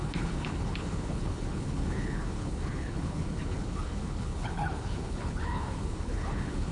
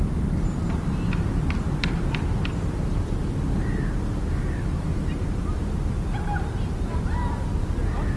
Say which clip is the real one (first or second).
second